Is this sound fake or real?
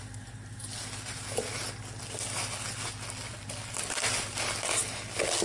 real